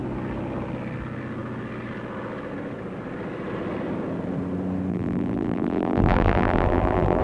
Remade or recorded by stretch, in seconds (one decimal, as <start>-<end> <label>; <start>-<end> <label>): 0.0-4.9 recorded; 4.9-7.2 remade